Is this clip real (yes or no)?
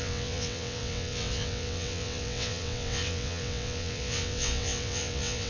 no